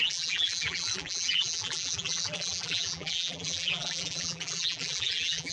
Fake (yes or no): yes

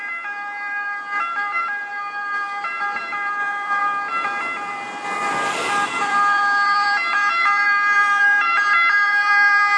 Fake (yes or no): yes